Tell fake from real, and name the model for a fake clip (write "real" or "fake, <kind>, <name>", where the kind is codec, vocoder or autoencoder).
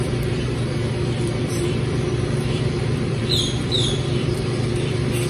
fake, vocoder, BigVGAN v2